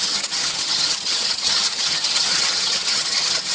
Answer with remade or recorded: remade